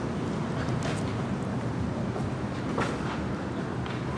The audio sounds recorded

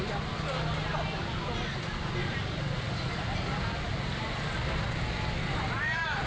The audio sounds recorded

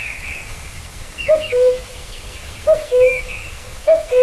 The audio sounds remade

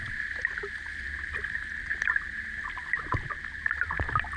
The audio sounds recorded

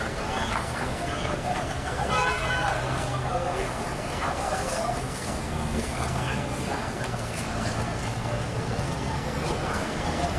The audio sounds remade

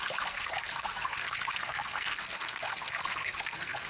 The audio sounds remade